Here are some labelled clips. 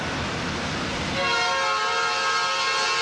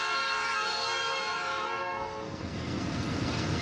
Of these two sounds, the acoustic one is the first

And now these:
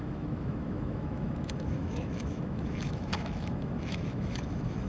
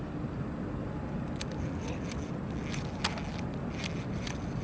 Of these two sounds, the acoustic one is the second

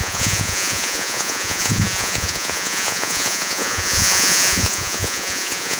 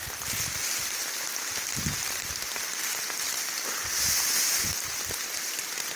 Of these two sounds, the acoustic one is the second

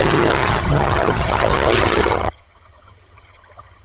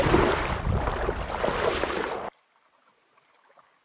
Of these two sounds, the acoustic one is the second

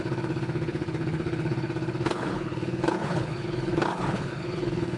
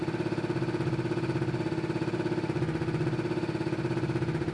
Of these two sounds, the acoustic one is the second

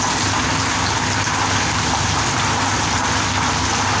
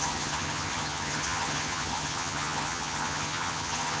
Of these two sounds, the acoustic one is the first